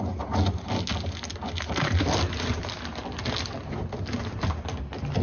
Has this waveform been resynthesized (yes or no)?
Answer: no